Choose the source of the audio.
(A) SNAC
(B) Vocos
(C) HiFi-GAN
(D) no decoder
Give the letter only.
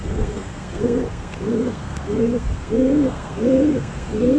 A